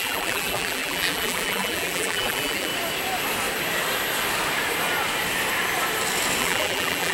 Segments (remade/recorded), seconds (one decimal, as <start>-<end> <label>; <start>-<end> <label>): 0.0-2.7 remade; 2.7-6.4 recorded; 6.4-7.1 remade